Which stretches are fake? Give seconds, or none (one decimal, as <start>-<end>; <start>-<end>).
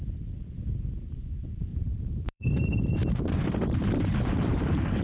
1.7-5.0